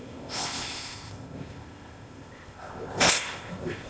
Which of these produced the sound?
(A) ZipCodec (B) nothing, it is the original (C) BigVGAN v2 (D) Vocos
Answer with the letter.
A